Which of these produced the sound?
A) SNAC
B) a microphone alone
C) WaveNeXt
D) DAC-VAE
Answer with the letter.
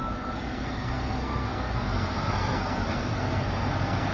A